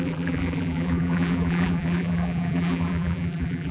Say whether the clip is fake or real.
fake